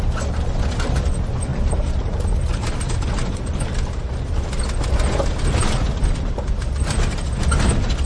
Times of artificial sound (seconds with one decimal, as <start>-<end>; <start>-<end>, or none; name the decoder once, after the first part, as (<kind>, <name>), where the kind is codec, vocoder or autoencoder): 1.5-3.5 (vocoder, BigVGAN v2); 5.6-6.3